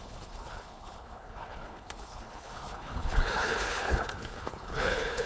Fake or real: fake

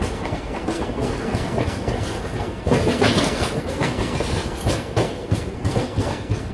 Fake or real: fake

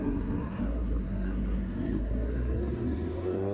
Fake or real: fake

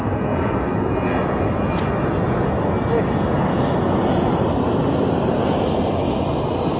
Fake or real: real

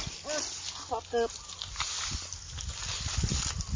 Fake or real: real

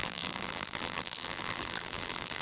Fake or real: fake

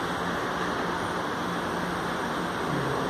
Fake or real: real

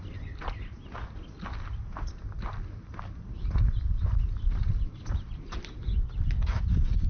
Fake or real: real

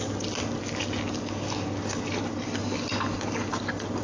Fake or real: real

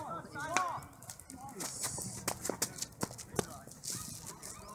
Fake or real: real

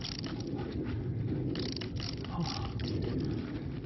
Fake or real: real